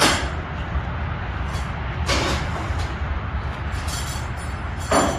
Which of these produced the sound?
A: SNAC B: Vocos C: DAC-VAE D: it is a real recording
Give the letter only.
D